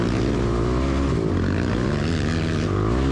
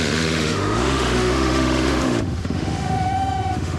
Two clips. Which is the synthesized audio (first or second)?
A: second